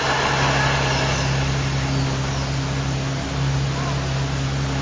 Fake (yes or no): no